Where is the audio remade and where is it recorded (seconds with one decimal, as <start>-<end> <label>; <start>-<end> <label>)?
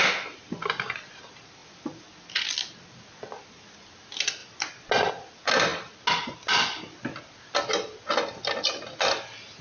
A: 0.0-9.6 recorded